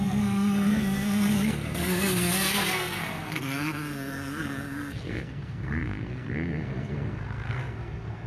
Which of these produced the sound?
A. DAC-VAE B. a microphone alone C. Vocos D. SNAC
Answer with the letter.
D